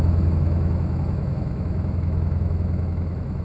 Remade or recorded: remade